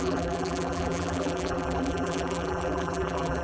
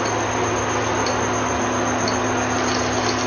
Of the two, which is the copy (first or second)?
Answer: first